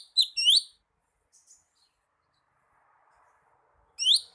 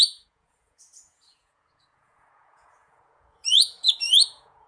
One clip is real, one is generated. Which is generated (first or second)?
second